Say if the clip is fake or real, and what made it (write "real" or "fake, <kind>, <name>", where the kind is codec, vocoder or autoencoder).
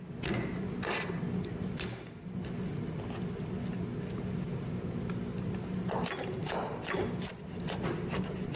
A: real